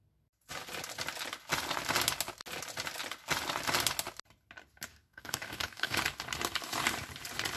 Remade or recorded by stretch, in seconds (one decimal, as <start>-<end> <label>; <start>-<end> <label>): 0.0-4.9 recorded; 4.9-6.0 remade; 6.0-7.6 recorded